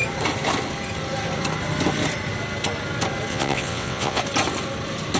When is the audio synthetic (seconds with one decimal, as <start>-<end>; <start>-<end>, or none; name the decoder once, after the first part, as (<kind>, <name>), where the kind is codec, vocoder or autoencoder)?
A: 3.3-4.2 (vocoder, WaveNeXt)